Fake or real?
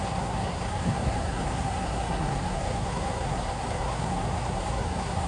fake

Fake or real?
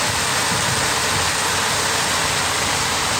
real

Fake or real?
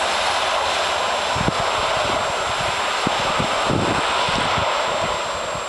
real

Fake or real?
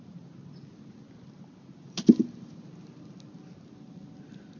real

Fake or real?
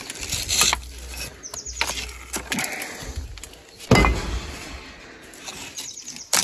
real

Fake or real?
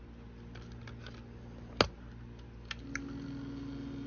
real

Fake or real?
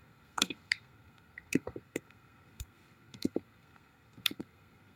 fake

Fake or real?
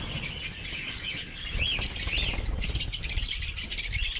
real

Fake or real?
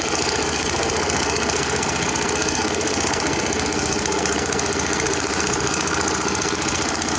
fake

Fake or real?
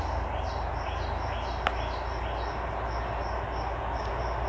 real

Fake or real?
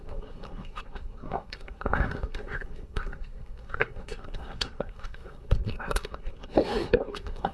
fake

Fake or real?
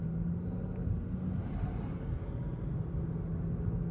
real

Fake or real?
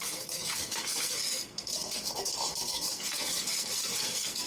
fake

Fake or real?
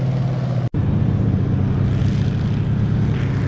real